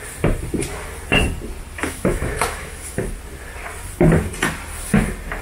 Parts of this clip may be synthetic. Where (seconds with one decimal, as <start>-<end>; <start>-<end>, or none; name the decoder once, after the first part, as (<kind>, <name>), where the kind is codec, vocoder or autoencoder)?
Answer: 1.8-3.0 (autoencoder, DAC-VAE)

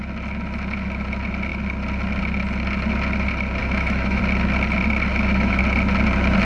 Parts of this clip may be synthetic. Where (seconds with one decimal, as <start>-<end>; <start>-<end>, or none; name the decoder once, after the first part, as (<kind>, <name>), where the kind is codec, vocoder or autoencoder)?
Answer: 3.6-4.2 (autoencoder, DAC-VAE); 5.1-5.6